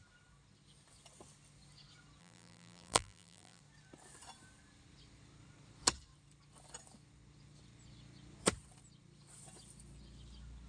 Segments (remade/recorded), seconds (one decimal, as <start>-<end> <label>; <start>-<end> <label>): 0.0-2.2 recorded; 2.2-3.6 remade; 3.6-10.7 recorded